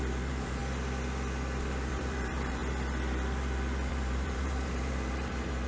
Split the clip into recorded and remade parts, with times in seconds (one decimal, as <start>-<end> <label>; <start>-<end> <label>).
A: 0.0-0.6 remade; 0.6-1.9 recorded; 1.9-2.6 remade; 2.6-3.9 recorded; 3.9-5.7 remade